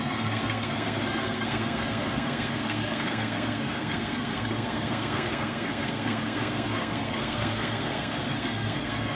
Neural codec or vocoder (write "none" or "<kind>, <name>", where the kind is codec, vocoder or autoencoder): codec, SNAC